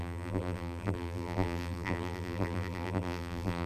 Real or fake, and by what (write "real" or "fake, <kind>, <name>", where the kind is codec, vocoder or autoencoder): fake, vocoder, BigVGAN v2